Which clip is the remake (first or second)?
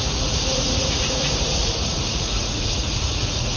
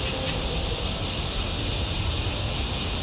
first